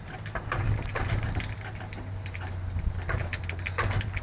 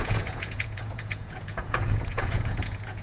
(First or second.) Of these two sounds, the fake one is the second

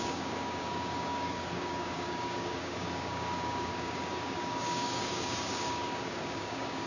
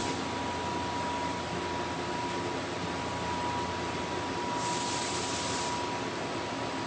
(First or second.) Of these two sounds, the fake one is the first